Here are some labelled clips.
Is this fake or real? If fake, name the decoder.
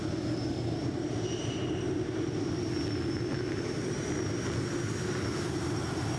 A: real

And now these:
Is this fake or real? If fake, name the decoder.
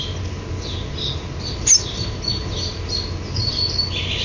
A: real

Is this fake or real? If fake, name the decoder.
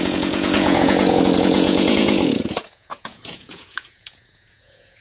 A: fake, vocoder, Vocos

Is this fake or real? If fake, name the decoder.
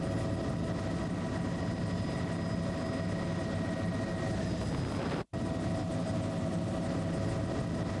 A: real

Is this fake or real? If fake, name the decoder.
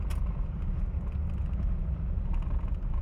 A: real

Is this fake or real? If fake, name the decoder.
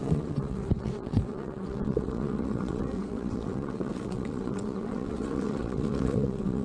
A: fake, vocoder, WaveNeXt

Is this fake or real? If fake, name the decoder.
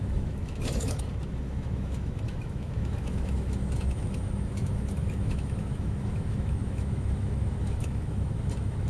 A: fake, autoencoder, DAC-VAE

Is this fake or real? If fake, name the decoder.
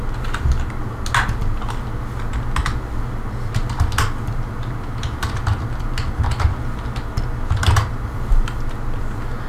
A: real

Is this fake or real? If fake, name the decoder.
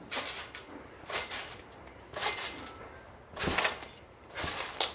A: real